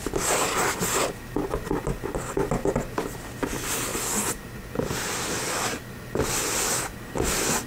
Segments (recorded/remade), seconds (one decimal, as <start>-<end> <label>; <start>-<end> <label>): 0.0-7.7 recorded